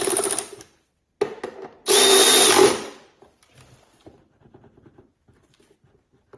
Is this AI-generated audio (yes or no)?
no